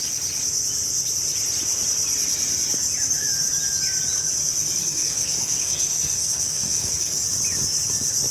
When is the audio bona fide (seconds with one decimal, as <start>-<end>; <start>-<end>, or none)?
0.0-4.8; 7.2-8.3